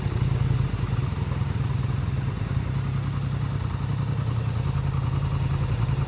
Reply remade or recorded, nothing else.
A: recorded